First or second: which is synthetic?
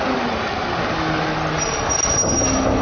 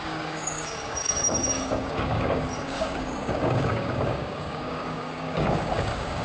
second